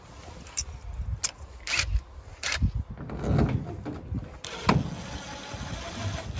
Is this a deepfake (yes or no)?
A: no